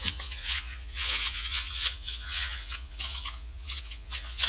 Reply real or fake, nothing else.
fake